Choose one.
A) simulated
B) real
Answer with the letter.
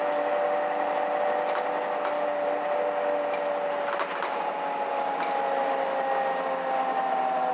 B